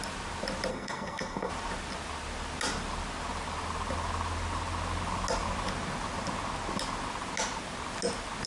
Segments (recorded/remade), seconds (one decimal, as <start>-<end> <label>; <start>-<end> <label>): 0.0-0.7 recorded; 0.7-1.5 remade; 1.5-8.5 recorded